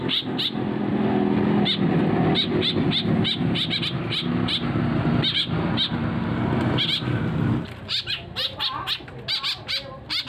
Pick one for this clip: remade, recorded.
recorded